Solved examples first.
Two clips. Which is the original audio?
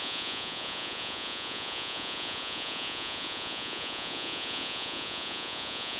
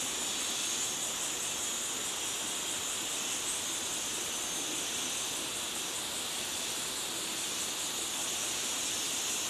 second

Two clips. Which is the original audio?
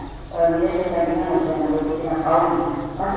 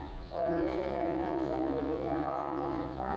first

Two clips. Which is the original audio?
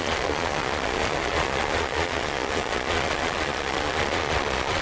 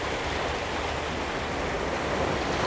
second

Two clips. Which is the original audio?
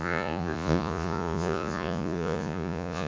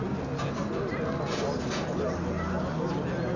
second